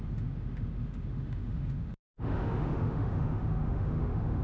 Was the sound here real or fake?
fake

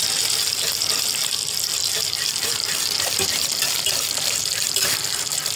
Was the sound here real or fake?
fake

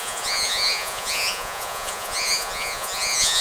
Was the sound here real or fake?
fake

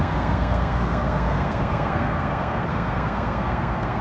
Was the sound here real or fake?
fake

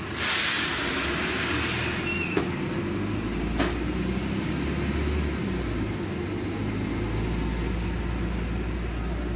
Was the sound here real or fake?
real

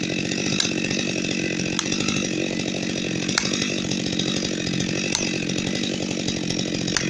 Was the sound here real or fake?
real